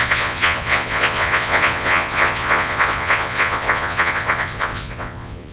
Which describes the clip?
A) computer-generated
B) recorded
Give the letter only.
A